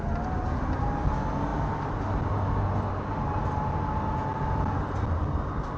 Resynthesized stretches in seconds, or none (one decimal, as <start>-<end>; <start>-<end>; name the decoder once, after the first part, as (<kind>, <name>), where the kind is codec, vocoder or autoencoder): none